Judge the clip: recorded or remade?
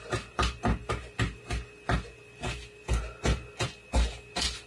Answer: recorded